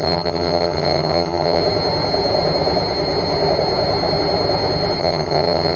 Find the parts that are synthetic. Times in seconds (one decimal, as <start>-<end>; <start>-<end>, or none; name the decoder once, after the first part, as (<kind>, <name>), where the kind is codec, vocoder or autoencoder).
0.0-1.6 (vocoder, HiFi-GAN); 5.0-5.8